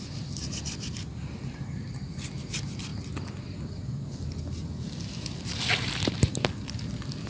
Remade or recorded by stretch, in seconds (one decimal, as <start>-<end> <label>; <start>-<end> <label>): 0.0-7.3 recorded